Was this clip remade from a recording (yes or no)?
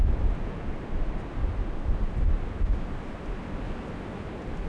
no